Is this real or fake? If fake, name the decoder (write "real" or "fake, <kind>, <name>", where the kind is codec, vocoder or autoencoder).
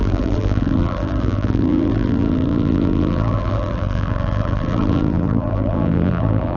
fake, vocoder, BigVGAN v2